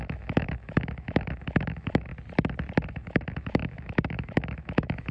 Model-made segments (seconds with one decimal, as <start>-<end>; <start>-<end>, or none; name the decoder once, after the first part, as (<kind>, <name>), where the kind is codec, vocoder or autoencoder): 0.0-2.1 (autoencoder, DAC-VAE); 2.9-5.1